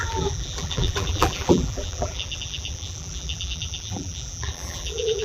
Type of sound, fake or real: fake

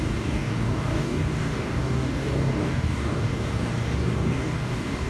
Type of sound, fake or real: fake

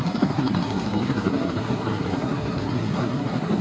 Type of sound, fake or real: fake